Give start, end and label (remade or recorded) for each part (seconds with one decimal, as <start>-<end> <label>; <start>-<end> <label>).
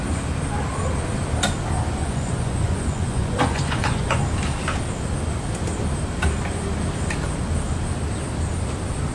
0.0-2.0 recorded; 2.0-4.2 remade; 4.2-9.1 recorded